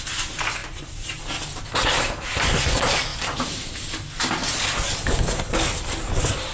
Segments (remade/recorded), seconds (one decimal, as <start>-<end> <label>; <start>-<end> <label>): 0.0-0.6 recorded; 0.6-1.2 remade; 1.2-6.5 recorded